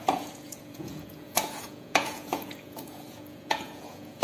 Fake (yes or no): yes